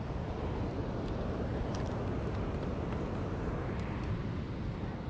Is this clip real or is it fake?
real